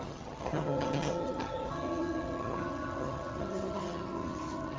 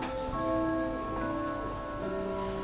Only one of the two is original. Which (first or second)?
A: second